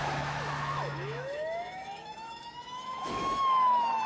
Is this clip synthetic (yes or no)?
yes